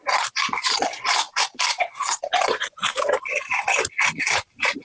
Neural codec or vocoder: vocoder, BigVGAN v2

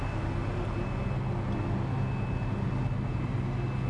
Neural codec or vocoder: none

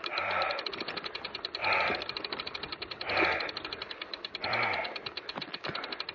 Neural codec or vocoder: vocoder, BigVGAN v2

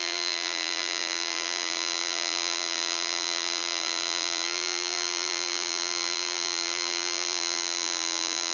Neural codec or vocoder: vocoder, BigVGAN v2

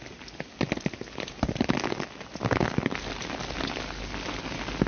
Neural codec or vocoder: none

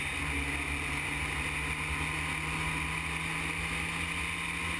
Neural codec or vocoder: none